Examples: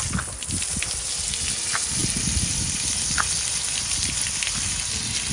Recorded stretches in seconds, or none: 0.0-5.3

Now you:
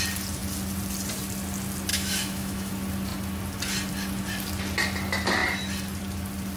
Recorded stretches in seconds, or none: 0.0-1.9; 2.7-6.6

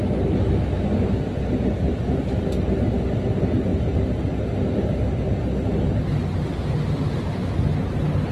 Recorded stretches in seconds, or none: 0.0-8.3